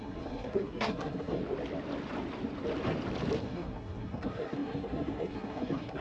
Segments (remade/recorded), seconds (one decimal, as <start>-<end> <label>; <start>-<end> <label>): 0.0-1.4 remade; 1.4-3.4 recorded; 3.4-6.0 remade